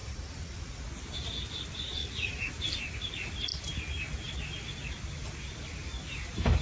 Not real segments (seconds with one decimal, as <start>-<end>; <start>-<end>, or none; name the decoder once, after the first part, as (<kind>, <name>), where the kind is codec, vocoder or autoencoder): 0.0-0.8 (vocoder, Vocos); 2.0-2.5

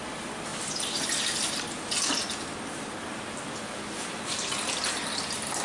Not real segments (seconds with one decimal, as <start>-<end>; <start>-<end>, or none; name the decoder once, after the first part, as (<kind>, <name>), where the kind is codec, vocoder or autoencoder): none

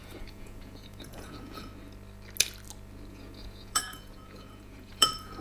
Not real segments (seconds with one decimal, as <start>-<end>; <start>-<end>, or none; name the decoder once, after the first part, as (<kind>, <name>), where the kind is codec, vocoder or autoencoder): 0.0-1.7 (vocoder, Vocos); 3.1-5.4

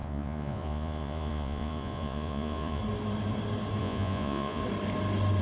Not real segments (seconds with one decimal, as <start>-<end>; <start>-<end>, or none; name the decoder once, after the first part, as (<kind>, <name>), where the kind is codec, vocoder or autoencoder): 0.0-2.8 (vocoder, Vocos); 3.8-4.6